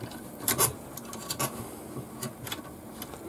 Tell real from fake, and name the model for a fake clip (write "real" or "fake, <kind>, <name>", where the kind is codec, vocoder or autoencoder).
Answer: real